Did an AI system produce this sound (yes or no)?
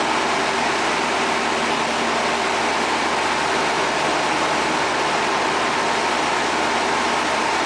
no